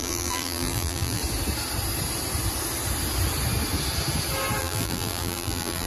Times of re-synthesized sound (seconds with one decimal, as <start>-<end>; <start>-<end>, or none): 0.0-1.2; 4.6-5.9